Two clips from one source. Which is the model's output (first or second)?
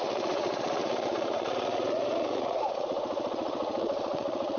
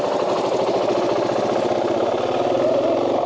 first